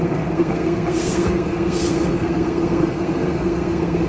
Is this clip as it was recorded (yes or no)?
no